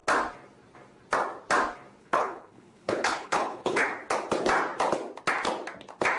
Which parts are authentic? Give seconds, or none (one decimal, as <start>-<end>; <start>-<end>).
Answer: 0.0-2.0; 3.9-6.2